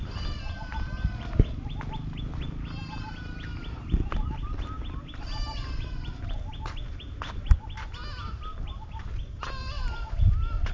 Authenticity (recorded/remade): recorded